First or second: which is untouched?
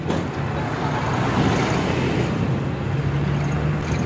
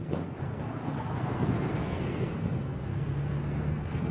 first